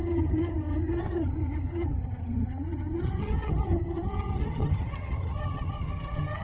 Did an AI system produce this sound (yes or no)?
yes